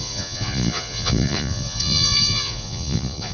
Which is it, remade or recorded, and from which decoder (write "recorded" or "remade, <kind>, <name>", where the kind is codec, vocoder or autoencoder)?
remade, vocoder, Vocos